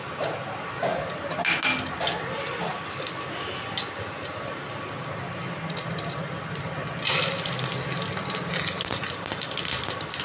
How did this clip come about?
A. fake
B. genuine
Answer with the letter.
B